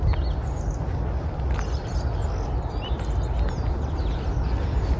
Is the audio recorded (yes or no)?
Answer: yes